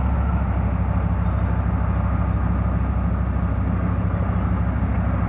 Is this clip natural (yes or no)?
yes